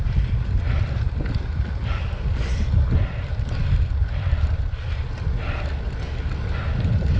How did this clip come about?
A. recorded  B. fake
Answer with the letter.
A